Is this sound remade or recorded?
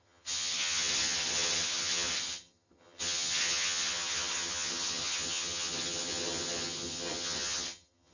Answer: remade